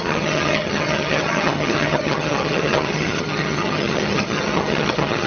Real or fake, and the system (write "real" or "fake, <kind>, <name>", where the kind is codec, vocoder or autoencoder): fake, vocoder, HiFi-GAN